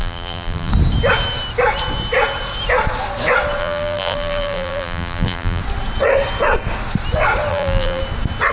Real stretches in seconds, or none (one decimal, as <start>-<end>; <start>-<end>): 0.7-3.6; 5.6-7.5; 8.0-8.5